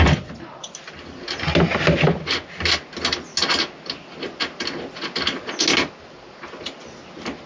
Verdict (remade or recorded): recorded